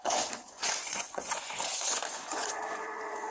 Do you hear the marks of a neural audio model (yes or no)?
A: yes